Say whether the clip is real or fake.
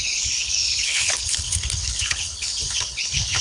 fake